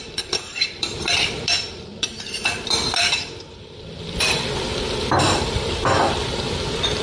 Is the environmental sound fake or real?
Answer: fake